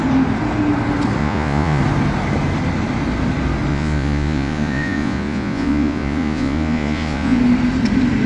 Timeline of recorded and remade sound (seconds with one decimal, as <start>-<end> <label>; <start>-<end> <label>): 0.0-1.2 recorded; 1.2-1.8 remade; 1.8-3.7 recorded; 3.7-7.4 remade; 7.4-8.3 recorded